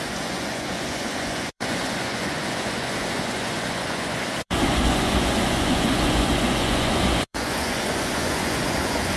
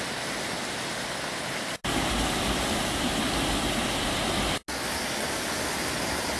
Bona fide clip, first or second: second